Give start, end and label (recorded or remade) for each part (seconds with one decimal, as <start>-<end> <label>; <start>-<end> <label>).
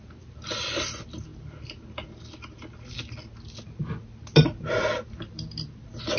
0.0-1.3 remade; 1.3-4.7 recorded; 4.7-6.2 remade